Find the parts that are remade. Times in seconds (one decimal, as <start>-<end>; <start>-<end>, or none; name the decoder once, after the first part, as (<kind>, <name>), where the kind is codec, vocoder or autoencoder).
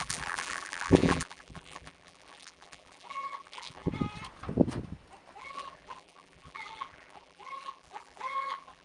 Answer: 0.0-3.9 (vocoder, BigVGAN v2); 5.4-8.8